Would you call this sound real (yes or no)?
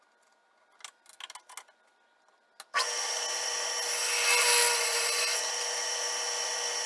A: yes